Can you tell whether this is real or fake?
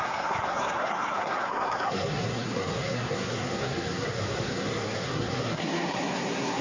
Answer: fake